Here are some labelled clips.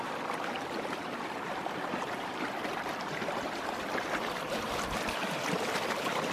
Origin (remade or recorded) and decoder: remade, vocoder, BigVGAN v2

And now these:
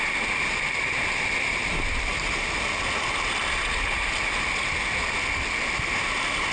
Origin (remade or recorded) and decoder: recorded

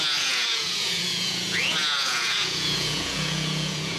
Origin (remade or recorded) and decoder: remade, vocoder, Vocos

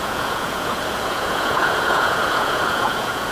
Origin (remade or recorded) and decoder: remade, vocoder, Vocos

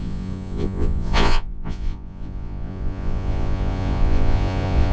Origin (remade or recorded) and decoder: remade, vocoder, Vocos